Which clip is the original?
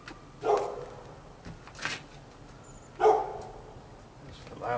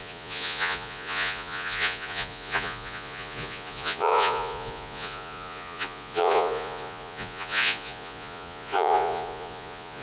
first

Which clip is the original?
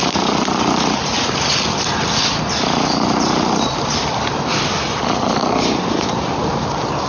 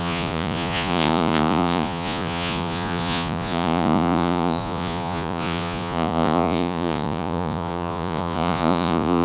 first